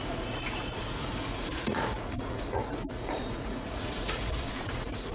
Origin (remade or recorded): remade